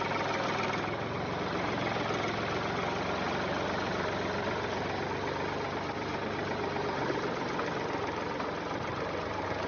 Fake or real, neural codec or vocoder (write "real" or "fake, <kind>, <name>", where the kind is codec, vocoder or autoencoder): real